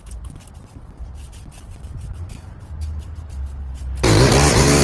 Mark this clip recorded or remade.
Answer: recorded